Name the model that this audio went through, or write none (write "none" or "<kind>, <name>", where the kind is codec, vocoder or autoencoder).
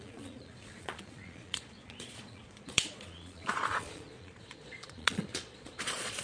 vocoder, Vocos